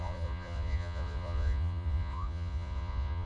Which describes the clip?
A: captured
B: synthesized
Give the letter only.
B